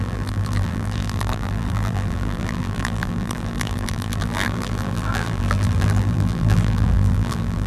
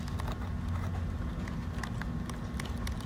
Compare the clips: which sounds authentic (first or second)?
second